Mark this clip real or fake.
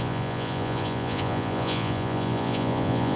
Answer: fake